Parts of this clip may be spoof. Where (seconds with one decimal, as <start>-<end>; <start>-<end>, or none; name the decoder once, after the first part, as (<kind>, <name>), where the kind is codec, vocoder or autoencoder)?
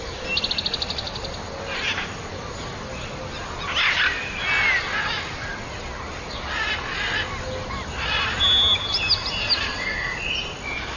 none